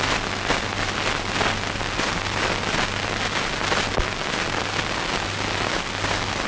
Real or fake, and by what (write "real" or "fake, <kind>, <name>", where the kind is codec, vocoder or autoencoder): real